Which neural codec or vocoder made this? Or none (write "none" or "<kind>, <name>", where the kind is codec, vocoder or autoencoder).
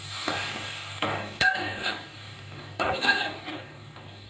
codec, DAC